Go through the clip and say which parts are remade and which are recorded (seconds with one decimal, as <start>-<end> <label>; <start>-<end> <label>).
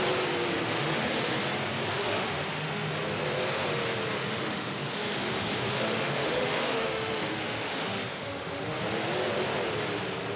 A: 0.0-0.6 recorded; 0.6-1.4 remade; 1.4-1.9 recorded; 1.9-2.9 remade; 2.9-4.2 recorded; 4.2-8.8 remade; 8.8-10.4 recorded